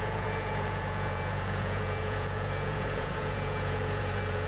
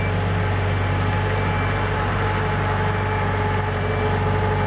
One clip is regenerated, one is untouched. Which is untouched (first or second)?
second